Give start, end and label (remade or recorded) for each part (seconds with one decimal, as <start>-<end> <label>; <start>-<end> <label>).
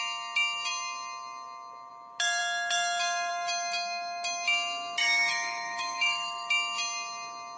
0.0-5.0 recorded; 5.0-6.5 remade; 6.5-7.6 recorded